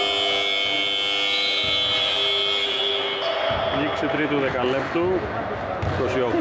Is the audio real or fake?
real